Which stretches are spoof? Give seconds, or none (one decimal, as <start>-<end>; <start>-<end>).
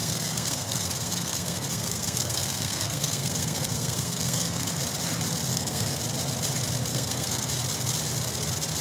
0.0-4.7; 5.5-6.0; 6.9-7.5